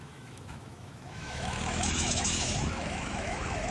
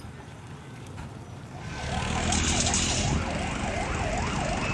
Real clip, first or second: second